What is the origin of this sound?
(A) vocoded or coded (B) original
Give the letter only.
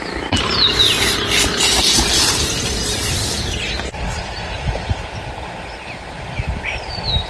B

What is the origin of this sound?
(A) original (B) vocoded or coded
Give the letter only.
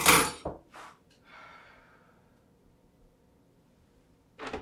A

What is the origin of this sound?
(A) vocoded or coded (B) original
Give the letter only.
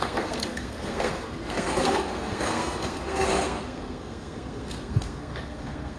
A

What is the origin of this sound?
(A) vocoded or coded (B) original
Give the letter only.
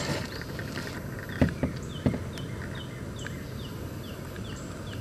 B